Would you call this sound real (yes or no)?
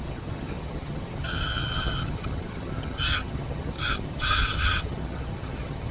no